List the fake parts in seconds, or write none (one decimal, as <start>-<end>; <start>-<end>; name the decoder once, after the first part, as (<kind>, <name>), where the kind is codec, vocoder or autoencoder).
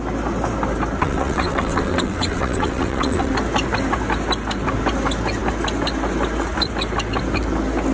1.0-3.3 (vocoder, WaveNeXt)